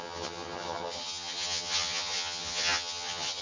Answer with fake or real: fake